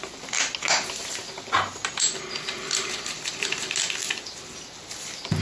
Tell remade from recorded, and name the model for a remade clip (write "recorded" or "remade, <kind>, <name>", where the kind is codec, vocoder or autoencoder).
recorded